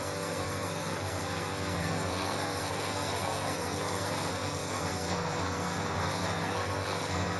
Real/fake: fake